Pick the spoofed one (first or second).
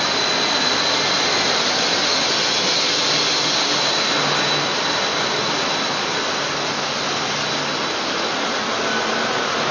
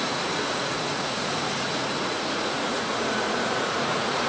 second